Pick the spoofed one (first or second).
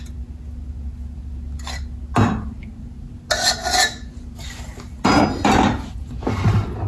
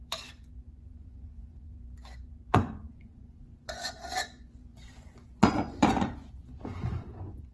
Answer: second